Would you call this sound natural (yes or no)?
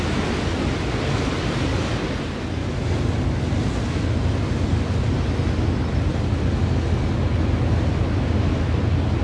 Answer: yes